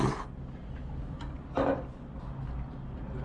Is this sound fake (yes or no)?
no